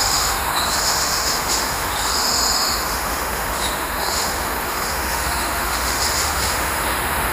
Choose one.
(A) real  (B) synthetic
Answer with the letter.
B